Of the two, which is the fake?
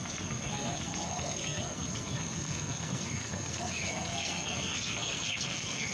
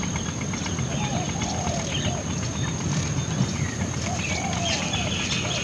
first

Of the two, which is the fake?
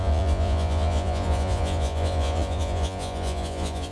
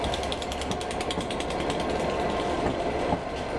first